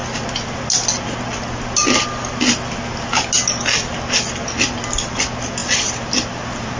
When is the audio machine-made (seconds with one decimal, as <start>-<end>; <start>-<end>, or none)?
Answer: none